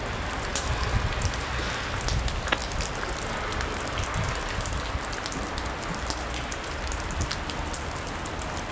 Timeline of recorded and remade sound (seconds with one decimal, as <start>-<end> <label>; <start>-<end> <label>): 0.0-8.7 recorded

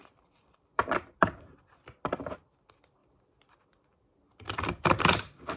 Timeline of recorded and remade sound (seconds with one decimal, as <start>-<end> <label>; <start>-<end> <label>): 0.0-3.0 remade; 3.0-5.0 recorded; 5.0-5.6 remade